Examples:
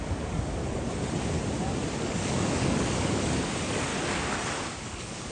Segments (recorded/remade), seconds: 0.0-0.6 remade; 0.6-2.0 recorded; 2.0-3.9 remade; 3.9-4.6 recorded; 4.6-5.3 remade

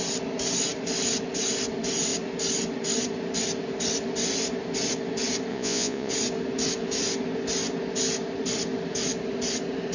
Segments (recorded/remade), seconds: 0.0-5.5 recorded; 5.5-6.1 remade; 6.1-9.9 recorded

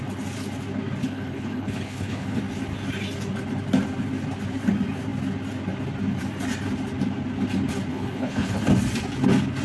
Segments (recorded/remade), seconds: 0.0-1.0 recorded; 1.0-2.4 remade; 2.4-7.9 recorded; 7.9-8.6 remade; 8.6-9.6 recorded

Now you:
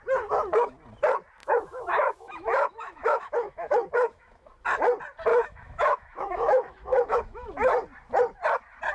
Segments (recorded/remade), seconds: 0.0-1.4 recorded; 1.4-4.5 remade; 4.5-5.3 recorded; 5.3-7.7 remade; 7.7-8.9 recorded

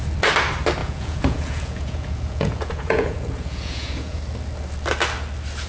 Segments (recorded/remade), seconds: 0.0-0.8 recorded; 0.8-4.2 remade; 4.2-5.7 recorded

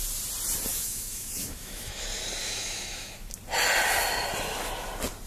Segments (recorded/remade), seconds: 0.0-0.7 recorded; 0.7-2.0 remade; 2.0-2.4 recorded; 2.4-3.3 remade; 3.3-5.3 recorded